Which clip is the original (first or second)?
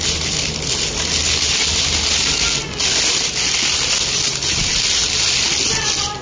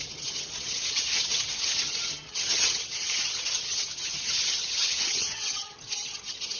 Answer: first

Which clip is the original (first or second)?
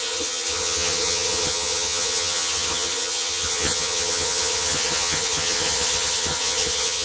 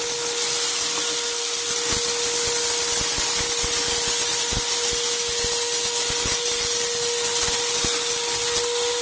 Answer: second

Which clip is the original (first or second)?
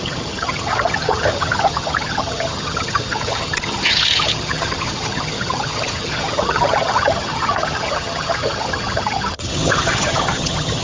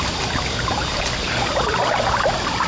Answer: second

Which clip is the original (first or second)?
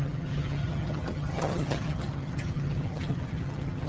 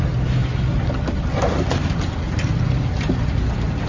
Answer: second